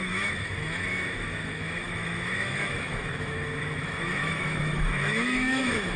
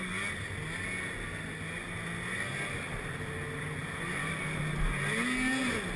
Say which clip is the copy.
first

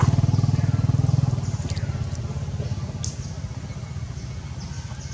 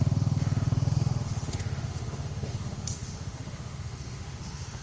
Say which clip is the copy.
second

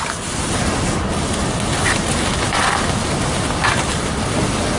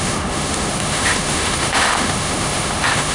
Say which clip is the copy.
second